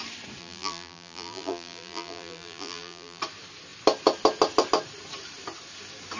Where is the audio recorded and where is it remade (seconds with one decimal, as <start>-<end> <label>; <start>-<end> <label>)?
0.0-0.4 recorded; 0.4-3.2 remade; 3.2-6.2 recorded